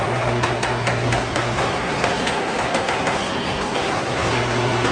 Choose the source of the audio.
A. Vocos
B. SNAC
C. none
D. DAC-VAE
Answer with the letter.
B